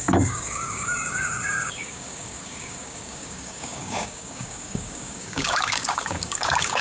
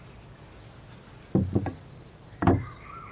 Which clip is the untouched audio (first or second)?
second